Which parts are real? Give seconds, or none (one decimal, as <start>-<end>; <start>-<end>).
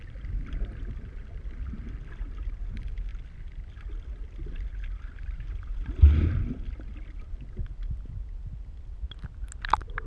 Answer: 0.0-10.1